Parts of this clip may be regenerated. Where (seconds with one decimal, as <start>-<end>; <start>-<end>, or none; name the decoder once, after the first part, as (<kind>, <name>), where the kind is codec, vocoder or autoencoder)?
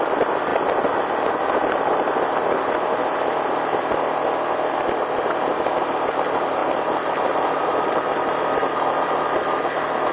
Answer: none